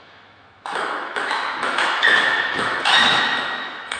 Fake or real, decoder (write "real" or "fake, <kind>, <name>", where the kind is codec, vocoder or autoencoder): fake, autoencoder, DAC-VAE